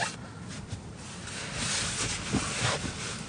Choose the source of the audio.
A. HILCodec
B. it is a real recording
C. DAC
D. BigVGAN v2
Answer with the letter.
B